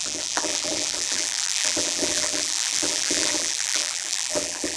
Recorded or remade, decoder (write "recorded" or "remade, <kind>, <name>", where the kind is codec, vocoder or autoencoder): remade, vocoder, BigVGAN v2